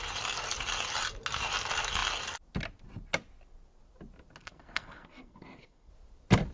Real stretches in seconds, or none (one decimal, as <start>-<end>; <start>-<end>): 0.0-4.4; 5.9-6.5